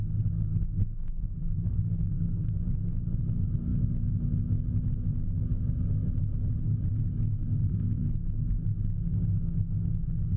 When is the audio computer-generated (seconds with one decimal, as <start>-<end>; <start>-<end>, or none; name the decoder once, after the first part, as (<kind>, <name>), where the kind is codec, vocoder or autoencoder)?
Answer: 0.8-2.5 (codec, SNAC); 7.6-8.1